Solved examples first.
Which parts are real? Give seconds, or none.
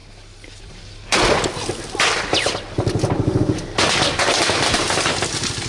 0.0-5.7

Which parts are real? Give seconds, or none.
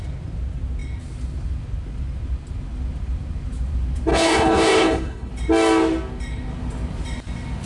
0.0-4.1; 5.3-7.7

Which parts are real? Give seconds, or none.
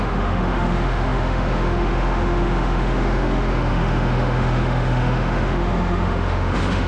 none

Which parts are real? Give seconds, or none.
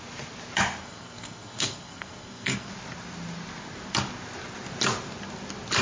0.0-0.8; 2.7-5.8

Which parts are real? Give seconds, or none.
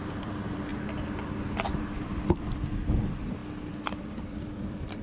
0.7-1.7; 3.4-4.0